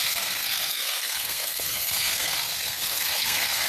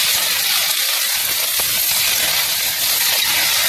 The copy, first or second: first